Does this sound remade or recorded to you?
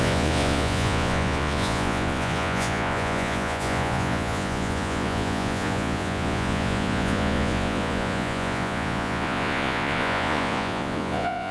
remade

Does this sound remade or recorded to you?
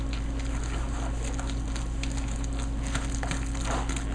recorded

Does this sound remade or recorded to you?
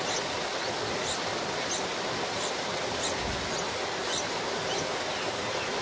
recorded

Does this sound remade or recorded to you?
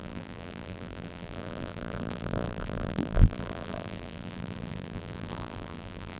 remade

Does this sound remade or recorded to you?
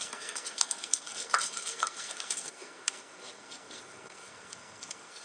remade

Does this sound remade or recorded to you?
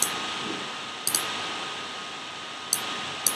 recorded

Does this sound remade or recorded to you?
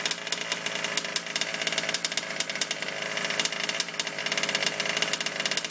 recorded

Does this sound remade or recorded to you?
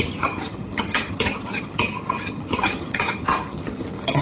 remade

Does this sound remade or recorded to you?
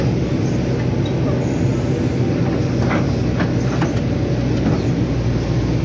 recorded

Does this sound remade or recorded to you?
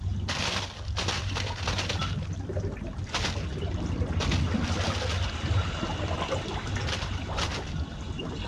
recorded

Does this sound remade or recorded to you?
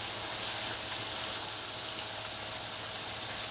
recorded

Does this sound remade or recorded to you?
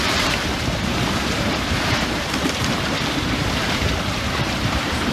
remade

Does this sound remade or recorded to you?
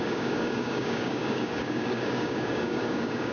remade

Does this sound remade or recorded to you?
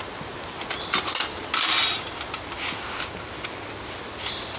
recorded